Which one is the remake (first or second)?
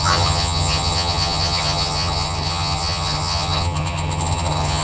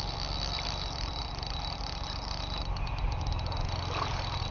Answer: first